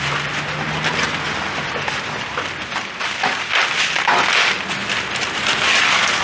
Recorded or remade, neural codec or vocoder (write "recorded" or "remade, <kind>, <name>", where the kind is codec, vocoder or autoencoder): recorded